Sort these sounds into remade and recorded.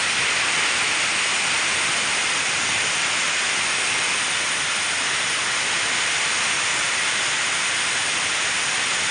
recorded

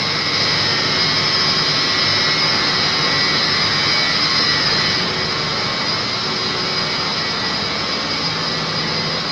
recorded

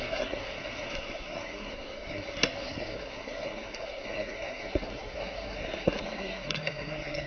remade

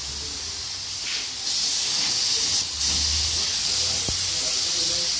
recorded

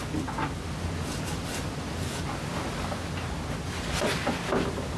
recorded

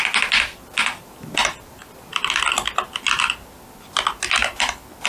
recorded